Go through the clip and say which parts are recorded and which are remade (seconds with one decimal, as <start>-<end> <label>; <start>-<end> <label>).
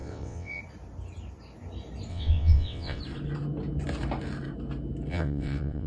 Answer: 0.0-0.6 remade; 0.6-2.1 recorded; 2.1-3.0 remade; 3.0-5.1 recorded; 5.1-5.9 remade